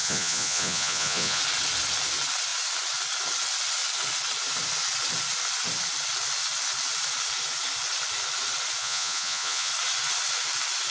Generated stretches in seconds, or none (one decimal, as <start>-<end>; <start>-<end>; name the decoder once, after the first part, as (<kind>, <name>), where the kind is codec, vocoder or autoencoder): 0.0-1.4 (vocoder, Vocos); 8.8-9.7